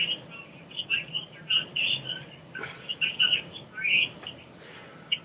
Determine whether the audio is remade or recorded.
recorded